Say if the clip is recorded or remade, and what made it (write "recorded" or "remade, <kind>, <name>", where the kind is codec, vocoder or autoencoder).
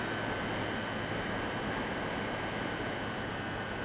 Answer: recorded